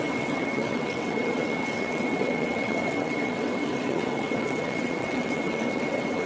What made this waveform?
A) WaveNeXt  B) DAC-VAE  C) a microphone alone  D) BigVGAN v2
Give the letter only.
A